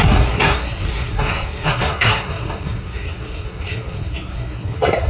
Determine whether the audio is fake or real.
fake